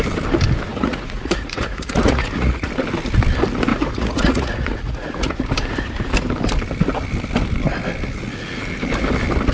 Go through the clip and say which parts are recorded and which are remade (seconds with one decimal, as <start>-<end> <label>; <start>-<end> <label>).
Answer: 0.0-0.7 recorded; 0.7-2.7 remade; 2.7-3.7 recorded; 3.7-5.4 remade; 5.4-9.5 recorded